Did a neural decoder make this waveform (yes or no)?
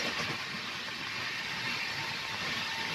no